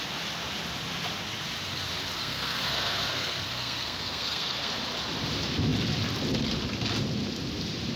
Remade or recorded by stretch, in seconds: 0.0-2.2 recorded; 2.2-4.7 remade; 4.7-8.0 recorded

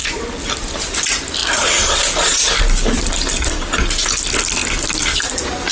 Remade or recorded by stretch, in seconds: 0.0-5.7 recorded

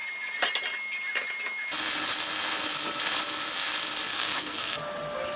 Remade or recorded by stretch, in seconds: 0.0-4.1 recorded; 4.1-4.8 remade; 4.8-5.4 recorded

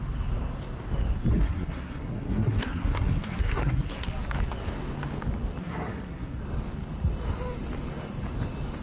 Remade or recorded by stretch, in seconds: 0.0-1.3 recorded; 1.3-4.1 remade; 4.1-5.6 recorded; 5.6-6.4 remade; 6.4-8.8 recorded